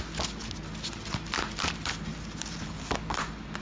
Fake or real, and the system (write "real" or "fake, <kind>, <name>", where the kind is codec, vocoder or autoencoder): real